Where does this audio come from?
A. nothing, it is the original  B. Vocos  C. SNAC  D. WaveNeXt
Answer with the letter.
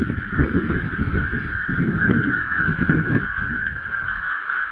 C